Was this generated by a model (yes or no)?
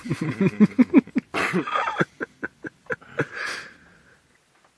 no